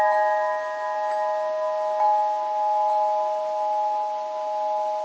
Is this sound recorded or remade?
recorded